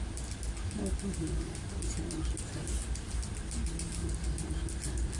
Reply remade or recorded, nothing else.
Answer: recorded